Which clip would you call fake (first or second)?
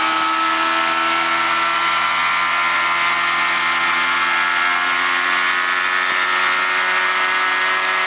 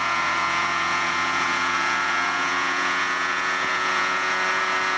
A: second